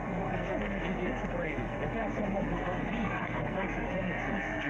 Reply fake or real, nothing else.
fake